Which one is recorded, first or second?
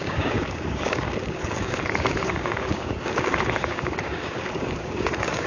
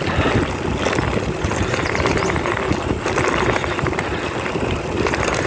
second